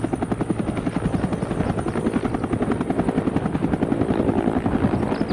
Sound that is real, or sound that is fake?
real